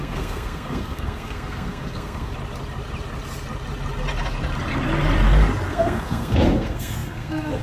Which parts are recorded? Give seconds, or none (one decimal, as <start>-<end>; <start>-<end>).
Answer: 2.3-5.7